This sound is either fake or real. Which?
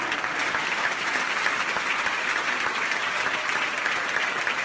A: real